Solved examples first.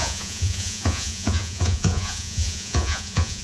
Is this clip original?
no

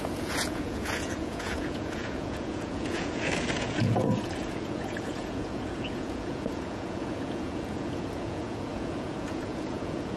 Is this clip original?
no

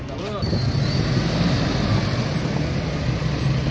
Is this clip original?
yes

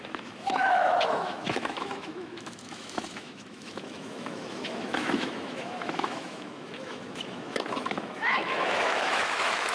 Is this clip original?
no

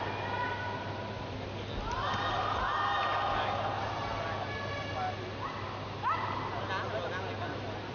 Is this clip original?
yes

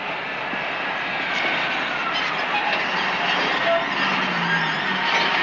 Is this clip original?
yes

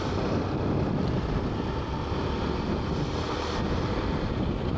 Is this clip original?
yes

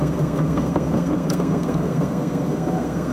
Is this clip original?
no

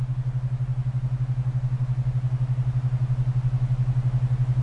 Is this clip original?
yes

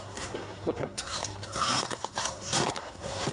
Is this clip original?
no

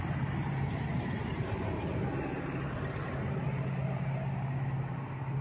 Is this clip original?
yes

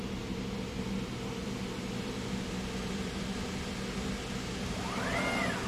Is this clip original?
yes